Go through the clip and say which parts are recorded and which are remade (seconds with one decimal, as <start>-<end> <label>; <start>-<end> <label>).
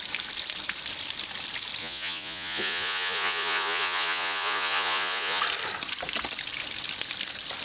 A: 0.0-1.8 recorded; 1.8-5.4 remade; 5.4-7.6 recorded